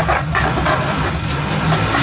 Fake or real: real